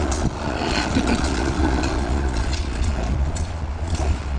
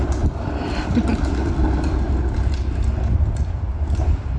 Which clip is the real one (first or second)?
second